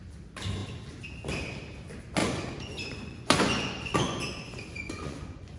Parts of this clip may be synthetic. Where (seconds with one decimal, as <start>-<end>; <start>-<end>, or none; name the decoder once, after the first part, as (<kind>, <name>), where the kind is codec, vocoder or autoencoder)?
2.2-5.6 (vocoder, Vocos)